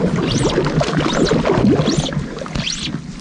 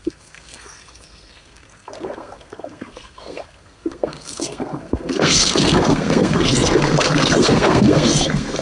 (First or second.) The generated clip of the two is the second